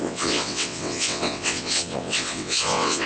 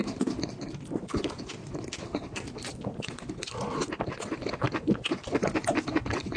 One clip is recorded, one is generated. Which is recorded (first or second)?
second